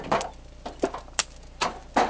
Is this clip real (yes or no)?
yes